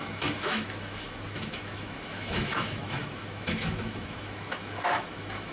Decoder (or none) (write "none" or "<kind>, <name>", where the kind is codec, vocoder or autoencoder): autoencoder, DAC-VAE